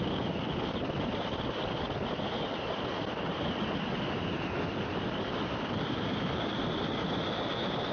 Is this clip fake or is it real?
real